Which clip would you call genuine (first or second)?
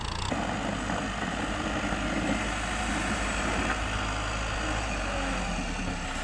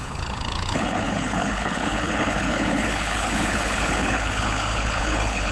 first